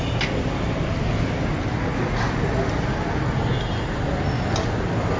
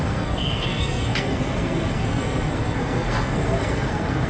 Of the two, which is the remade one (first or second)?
second